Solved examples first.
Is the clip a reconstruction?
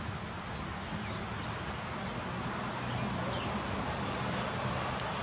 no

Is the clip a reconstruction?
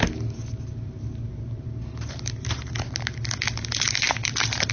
no